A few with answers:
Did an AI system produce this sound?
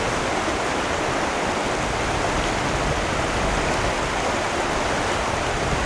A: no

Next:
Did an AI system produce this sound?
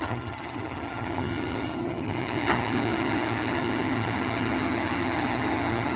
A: yes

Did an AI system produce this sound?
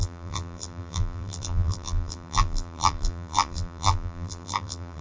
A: yes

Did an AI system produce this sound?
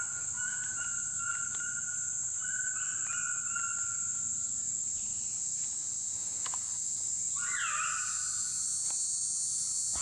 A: no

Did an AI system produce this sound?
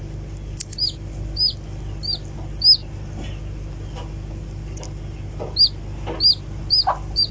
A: no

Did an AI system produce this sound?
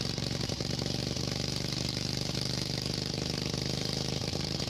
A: yes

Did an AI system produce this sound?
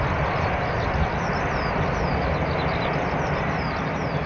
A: no